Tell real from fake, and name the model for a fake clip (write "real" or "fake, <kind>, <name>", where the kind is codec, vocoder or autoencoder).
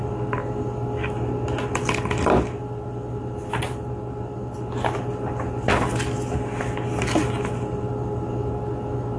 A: real